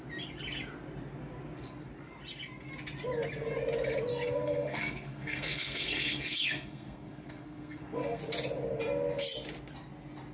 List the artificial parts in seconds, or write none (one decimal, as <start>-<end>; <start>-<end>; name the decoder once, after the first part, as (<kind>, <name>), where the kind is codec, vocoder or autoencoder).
4.1-8.2 (codec, SNAC)